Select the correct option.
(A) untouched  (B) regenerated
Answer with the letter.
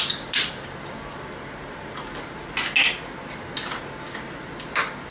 A